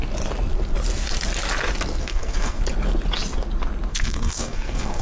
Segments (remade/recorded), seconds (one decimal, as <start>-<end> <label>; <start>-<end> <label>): 0.0-2.0 recorded; 2.0-2.6 remade; 2.6-3.9 recorded; 3.9-5.0 remade